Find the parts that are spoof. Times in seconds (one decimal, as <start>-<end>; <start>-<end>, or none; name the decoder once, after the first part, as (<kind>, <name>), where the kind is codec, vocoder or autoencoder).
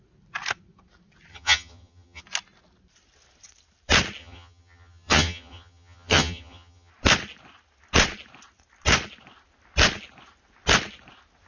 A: 1.3-2.2 (vocoder, HiFi-GAN); 4.2-6.9